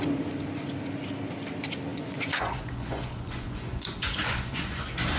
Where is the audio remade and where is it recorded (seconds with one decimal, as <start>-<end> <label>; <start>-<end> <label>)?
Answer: 0.0-1.9 recorded; 1.9-5.2 remade